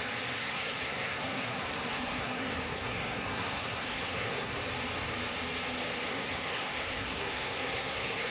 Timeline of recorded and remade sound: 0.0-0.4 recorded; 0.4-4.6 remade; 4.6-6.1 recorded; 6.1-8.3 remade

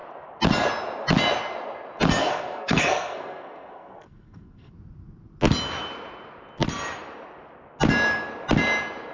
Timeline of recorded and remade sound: 0.0-2.2 recorded; 2.2-4.7 remade; 4.7-9.1 recorded

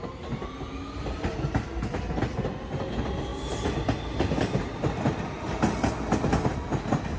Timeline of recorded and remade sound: 0.0-7.2 recorded

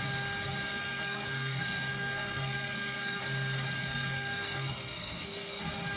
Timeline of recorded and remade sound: 0.0-0.7 recorded; 0.7-3.2 remade; 3.2-3.8 recorded; 3.8-5.6 remade; 5.6-6.0 recorded

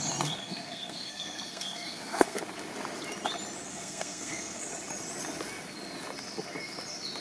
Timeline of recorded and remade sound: 0.0-0.4 recorded; 0.4-2.4 remade; 2.4-3.7 recorded; 3.7-4.6 remade; 4.6-7.2 recorded

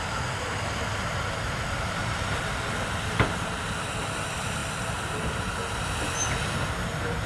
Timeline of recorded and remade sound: 0.0-7.3 recorded

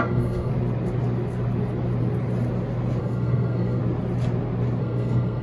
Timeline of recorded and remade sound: 0.0-0.5 remade; 0.5-3.0 recorded; 3.0-3.8 remade; 3.8-4.8 recorded; 4.8-5.4 remade

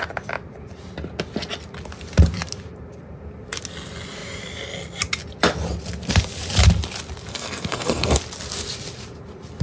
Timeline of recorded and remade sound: 0.0-7.3 recorded; 7.3-8.2 remade; 8.2-9.6 recorded